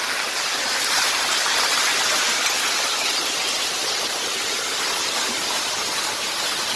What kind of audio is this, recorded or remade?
recorded